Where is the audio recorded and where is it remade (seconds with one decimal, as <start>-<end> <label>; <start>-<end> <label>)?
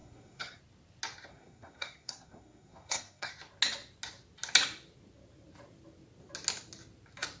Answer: 0.0-0.6 remade; 0.6-1.3 recorded; 1.3-3.3 remade; 3.3-7.4 recorded